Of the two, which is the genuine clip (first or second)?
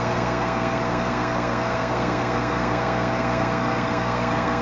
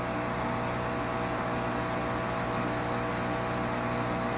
second